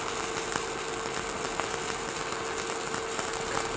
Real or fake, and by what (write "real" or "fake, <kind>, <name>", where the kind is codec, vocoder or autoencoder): real